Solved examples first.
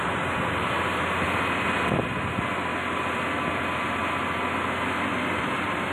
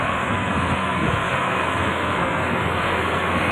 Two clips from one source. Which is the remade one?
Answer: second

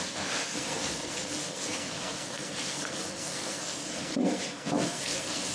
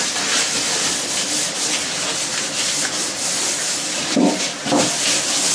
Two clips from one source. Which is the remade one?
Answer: first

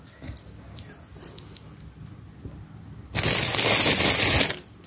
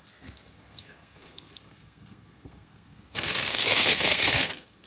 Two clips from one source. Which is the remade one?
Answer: second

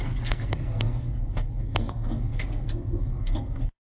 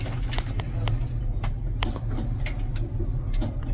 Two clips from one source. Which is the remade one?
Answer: first